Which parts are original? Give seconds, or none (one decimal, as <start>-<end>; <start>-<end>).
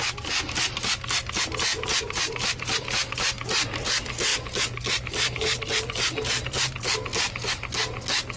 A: 0.0-1.7; 2.9-8.4